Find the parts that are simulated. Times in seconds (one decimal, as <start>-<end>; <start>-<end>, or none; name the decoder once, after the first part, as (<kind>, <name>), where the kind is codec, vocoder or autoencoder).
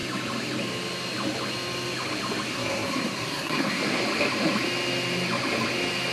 2.5-4.0 (codec, SNAC)